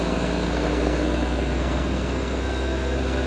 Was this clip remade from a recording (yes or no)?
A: yes